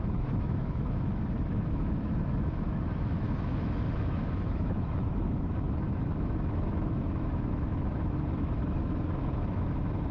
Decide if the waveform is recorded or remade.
remade